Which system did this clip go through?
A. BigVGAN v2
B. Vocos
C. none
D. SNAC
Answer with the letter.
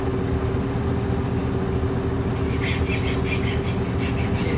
C